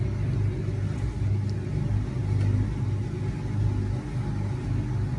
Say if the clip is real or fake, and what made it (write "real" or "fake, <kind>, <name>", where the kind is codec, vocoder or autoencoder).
real